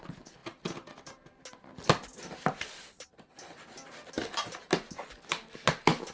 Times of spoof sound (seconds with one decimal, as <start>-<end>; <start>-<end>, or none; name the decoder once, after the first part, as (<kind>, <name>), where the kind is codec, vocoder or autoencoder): none